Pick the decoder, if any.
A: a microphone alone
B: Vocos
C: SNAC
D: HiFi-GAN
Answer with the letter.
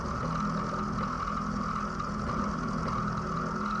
A